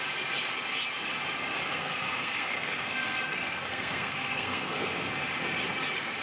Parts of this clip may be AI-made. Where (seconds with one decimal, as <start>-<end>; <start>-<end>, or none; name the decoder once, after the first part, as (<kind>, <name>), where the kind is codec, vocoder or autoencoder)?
1.7-5.1 (codec, SNAC)

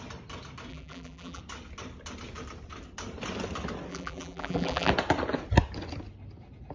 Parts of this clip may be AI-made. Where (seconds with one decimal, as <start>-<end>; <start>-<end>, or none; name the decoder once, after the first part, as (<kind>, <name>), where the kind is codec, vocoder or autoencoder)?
0.7-1.4 (vocoder, BigVGAN v2); 3.9-4.9

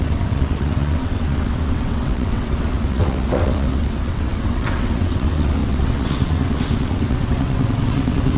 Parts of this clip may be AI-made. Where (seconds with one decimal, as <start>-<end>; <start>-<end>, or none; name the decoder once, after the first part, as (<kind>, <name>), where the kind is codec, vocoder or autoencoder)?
0.0-8.4 (vocoder, WaveNeXt)

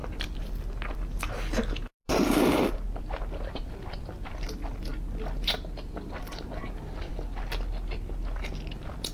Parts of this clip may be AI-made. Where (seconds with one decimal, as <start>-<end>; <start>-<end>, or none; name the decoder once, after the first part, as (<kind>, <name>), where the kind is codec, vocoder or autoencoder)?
none

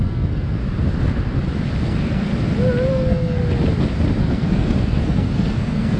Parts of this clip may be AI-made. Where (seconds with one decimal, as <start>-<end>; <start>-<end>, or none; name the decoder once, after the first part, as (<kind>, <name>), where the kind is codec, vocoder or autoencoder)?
0.0-0.6 (codec, SNAC); 1.8-2.3; 2.9-3.4; 4.2-6.0

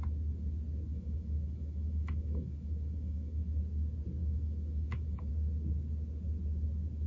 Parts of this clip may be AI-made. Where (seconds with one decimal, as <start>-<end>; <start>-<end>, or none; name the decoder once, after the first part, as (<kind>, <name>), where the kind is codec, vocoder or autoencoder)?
0.9-3.6 (autoencoder, DAC-VAE); 4.2-5.3

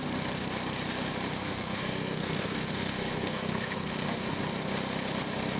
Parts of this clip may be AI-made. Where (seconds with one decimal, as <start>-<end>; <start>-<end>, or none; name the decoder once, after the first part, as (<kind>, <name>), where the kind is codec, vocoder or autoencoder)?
1.4-4.4 (codec, SNAC)

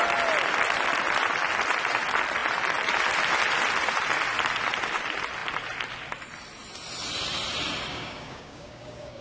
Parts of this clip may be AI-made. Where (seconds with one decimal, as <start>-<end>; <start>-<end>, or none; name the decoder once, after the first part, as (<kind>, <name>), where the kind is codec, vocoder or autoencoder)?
7.9-9.2 (codec, DAC)